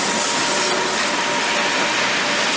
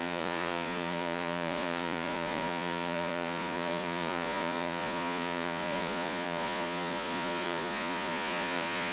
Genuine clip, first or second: first